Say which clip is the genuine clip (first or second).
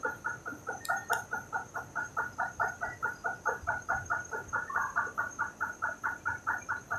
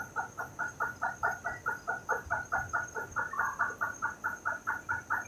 second